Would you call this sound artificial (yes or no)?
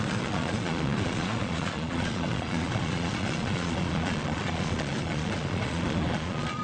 yes